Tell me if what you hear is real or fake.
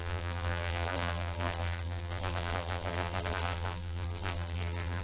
fake